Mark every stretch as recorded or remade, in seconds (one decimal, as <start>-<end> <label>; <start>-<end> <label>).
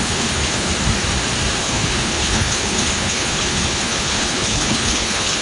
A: 0.0-0.7 remade; 0.7-1.6 recorded; 1.6-5.4 remade